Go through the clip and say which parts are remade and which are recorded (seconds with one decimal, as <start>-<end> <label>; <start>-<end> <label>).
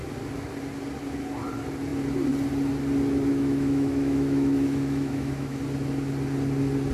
0.0-3.3 recorded; 3.3-5.6 remade; 5.6-6.9 recorded